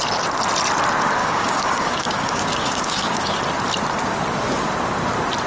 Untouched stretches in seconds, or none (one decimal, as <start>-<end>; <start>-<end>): 0.0-1.2; 3.4-5.5

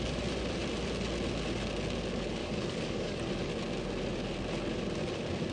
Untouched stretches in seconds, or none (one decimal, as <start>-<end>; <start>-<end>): 0.0-2.4; 3.3-5.5

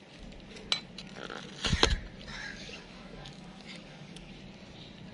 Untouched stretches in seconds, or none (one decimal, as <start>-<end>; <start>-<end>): 0.0-2.3; 4.3-5.1

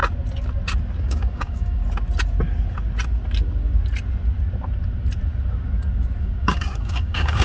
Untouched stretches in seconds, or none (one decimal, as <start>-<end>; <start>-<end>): 0.0-1.0; 1.8-6.2

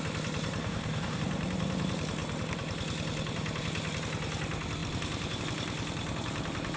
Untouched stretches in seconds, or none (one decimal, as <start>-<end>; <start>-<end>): 0.0-0.6; 1.2-6.8